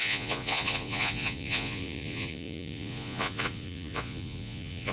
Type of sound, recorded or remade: remade